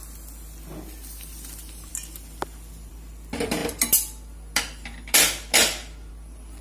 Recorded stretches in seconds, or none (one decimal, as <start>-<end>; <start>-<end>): 0.0-6.6